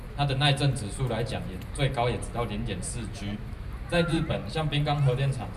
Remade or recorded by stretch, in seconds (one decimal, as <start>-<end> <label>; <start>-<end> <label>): 0.0-3.4 recorded; 3.4-4.4 remade; 4.4-5.6 recorded